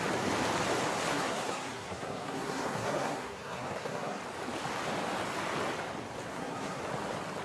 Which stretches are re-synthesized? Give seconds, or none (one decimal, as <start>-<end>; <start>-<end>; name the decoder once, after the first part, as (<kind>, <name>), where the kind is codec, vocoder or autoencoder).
1.1-4.2 (codec, SNAC); 6.3-6.8